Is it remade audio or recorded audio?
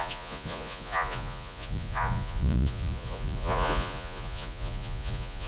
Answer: remade